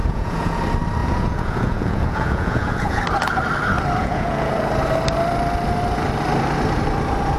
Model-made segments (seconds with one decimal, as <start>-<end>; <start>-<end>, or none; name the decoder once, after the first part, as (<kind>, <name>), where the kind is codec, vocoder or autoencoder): 0.0-0.6 (vocoder, Vocos); 1.0-3.0; 4.0-4.5